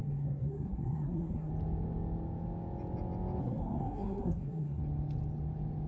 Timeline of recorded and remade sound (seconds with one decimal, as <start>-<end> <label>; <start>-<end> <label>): 0.0-1.5 remade; 1.5-3.4 recorded; 3.4-4.8 remade; 4.8-5.9 recorded